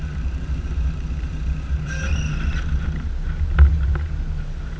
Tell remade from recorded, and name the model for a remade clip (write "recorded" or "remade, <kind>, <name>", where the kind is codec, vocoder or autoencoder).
remade, vocoder, BigVGAN v2